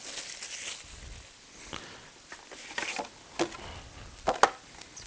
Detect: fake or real real